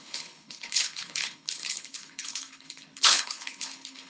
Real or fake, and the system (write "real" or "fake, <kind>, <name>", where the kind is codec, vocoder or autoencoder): fake, codec, HILCodec